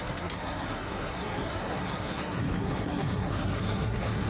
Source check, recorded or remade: remade